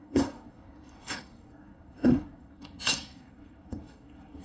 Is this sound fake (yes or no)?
yes